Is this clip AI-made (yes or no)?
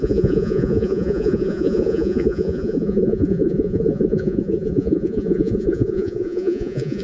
yes